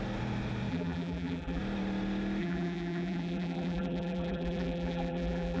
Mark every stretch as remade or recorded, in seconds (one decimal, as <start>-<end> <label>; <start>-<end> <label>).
0.0-0.7 recorded; 0.7-1.6 remade; 1.6-2.4 recorded; 2.4-5.6 remade